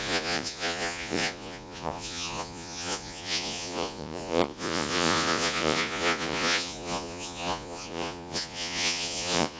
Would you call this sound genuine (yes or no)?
no